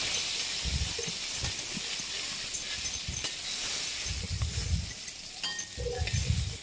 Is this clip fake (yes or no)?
no